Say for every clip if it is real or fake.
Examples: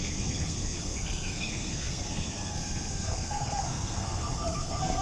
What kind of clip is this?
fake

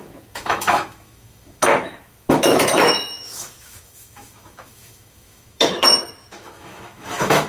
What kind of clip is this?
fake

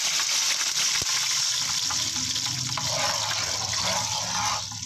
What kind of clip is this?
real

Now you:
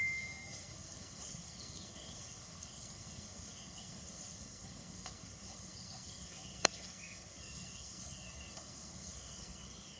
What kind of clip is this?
fake